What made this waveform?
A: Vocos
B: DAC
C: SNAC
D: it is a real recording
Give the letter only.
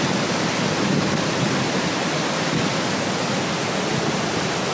D